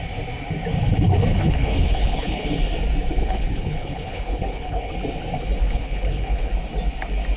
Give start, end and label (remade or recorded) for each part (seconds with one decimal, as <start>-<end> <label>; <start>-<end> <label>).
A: 0.0-1.3 recorded; 1.3-2.5 remade; 2.5-3.2 recorded; 3.2-4.9 remade; 4.9-5.6 recorded; 5.6-6.5 remade; 6.5-7.4 recorded